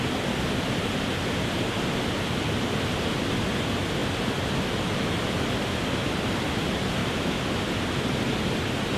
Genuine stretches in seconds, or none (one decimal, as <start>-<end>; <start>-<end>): 0.0-9.0